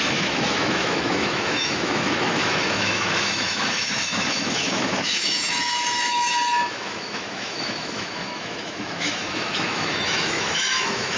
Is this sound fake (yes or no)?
yes